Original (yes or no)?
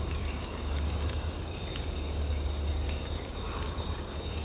no